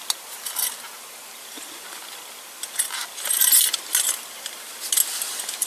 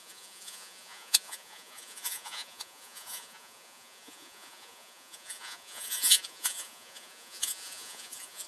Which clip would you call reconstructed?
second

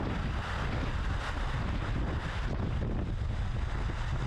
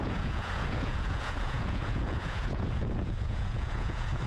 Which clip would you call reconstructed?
second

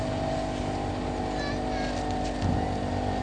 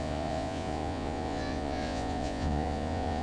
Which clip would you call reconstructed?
second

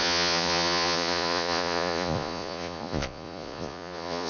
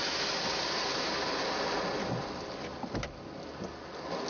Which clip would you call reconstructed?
first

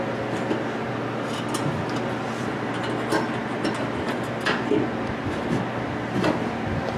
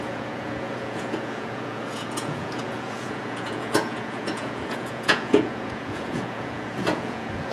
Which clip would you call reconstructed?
second